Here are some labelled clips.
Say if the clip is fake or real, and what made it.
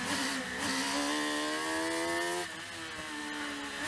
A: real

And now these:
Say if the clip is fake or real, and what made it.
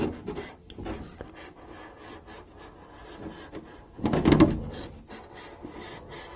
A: real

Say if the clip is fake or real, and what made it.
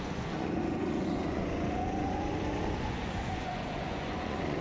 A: fake, vocoder, Vocos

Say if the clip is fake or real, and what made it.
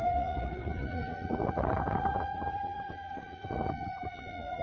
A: fake, vocoder, Vocos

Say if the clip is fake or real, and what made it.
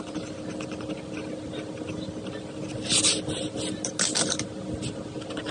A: real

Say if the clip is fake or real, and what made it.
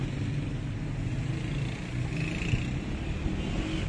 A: real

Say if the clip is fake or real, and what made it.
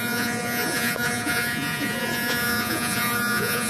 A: fake, vocoder, Vocos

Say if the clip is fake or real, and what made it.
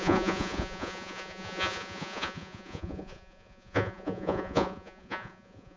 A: fake, vocoder, Vocos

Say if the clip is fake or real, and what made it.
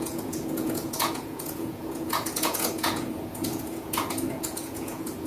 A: fake, vocoder, Vocos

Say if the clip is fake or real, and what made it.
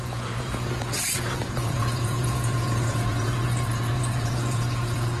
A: fake, vocoder, Vocos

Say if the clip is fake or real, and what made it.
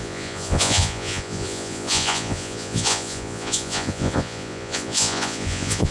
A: fake, vocoder, Vocos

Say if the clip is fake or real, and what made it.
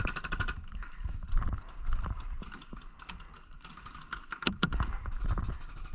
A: real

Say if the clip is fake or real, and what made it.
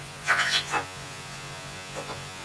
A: fake, vocoder, Vocos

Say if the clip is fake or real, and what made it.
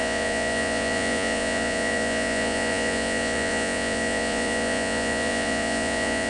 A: fake, vocoder, Vocos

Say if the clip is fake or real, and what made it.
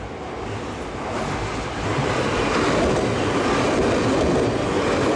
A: real